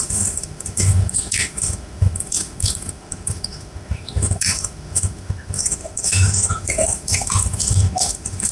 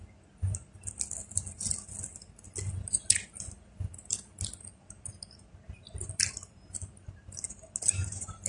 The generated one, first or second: first